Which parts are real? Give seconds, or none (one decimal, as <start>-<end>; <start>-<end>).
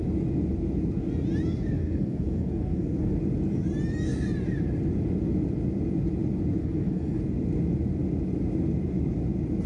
0.0-1.8; 3.1-6.6; 7.2-9.7